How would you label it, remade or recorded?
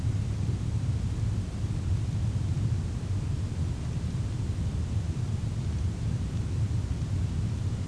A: recorded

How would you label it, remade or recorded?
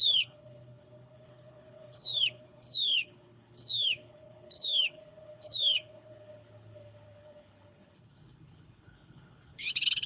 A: remade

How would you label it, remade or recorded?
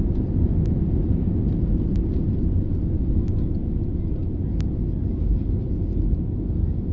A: recorded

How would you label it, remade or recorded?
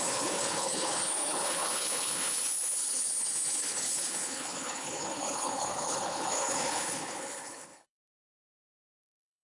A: remade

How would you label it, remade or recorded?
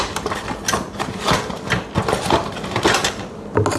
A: recorded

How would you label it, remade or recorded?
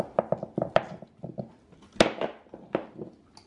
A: recorded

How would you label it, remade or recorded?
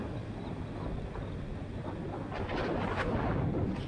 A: recorded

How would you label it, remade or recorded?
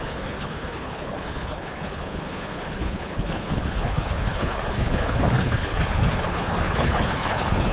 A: remade